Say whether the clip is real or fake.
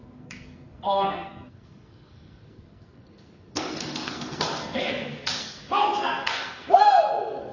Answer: fake